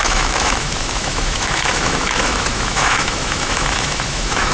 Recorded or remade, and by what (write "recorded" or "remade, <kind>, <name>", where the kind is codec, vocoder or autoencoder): remade, autoencoder, DAC-VAE